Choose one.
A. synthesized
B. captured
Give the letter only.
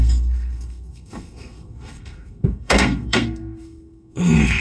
A